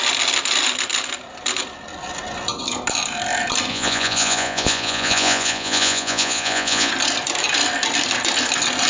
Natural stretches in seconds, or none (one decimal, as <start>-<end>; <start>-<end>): 0.0-3.7; 6.9-8.9